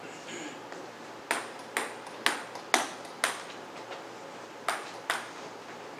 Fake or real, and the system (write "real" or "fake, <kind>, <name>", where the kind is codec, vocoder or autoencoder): real